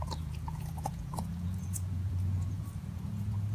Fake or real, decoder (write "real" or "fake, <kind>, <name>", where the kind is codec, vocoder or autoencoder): fake, vocoder, Vocos